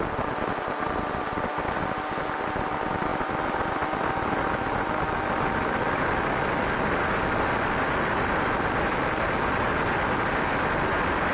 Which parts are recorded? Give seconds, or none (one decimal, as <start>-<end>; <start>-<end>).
0.0-11.3